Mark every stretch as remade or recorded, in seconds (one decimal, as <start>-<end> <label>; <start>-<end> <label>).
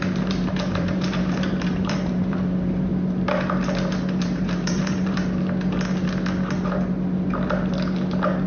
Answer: 0.0-2.9 remade; 2.9-4.2 recorded; 4.2-5.2 remade; 5.2-8.5 recorded